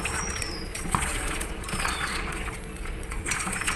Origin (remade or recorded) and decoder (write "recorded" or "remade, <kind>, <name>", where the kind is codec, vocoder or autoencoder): remade, vocoder, Vocos